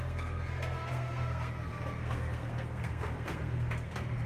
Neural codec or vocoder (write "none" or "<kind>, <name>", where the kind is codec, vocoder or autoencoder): codec, SNAC